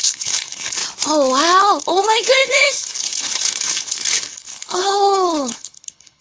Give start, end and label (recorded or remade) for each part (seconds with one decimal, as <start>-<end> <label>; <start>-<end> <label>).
0.0-0.8 remade; 0.8-1.6 recorded; 1.6-6.2 remade